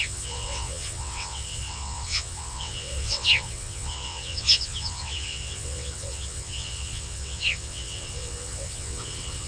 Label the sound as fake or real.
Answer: fake